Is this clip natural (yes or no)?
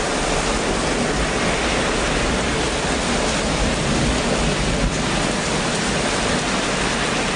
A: yes